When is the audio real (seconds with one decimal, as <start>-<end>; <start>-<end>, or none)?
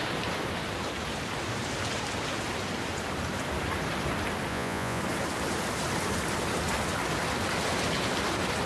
0.0-4.5; 5.0-8.7